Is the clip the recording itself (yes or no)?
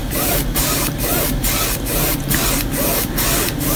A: yes